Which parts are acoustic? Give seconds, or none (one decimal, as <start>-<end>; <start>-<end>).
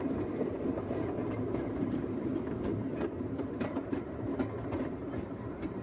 2.3-3.2